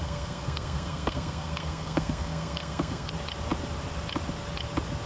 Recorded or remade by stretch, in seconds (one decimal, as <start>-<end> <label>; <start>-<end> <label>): 0.0-3.1 remade; 3.1-5.1 recorded